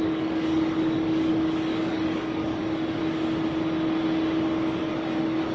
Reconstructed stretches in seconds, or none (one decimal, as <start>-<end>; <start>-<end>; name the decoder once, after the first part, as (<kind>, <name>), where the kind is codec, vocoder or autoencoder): 0.0-3.0 (codec, DAC); 4.9-5.5